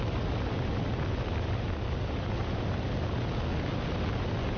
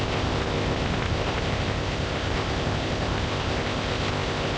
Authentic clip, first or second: first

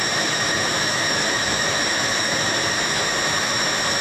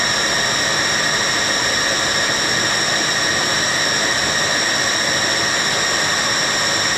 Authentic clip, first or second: second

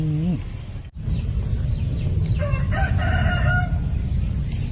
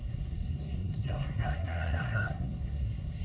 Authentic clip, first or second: first